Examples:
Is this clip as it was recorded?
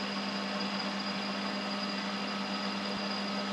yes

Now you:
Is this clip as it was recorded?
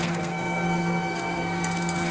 no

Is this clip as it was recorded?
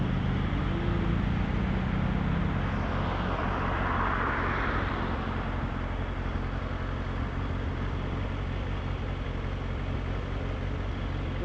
yes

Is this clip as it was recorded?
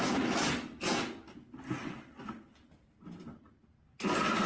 yes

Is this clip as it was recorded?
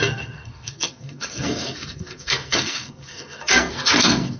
no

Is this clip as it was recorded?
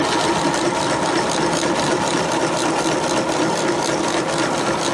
yes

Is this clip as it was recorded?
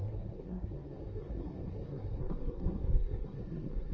no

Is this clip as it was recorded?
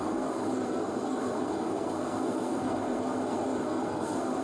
no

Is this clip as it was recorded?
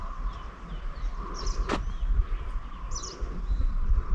yes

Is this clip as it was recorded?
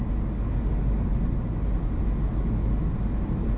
yes